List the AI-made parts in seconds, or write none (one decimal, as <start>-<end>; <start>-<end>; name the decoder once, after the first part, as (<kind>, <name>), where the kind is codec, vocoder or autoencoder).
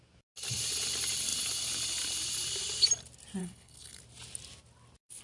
3.4-4.0 (codec, HILCodec)